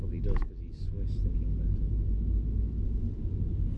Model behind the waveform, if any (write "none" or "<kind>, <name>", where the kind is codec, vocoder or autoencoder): none